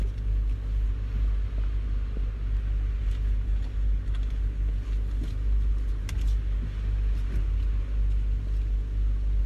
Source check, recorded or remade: recorded